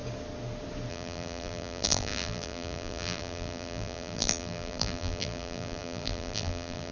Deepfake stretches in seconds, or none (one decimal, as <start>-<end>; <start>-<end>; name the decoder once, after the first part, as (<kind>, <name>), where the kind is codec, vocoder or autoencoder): 0.9-6.9 (vocoder, BigVGAN v2)